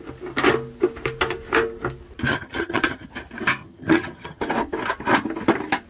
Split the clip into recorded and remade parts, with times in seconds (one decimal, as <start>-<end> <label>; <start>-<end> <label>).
0.0-2.3 recorded; 2.3-3.1 remade; 3.1-3.6 recorded; 3.6-4.4 remade; 4.4-5.9 recorded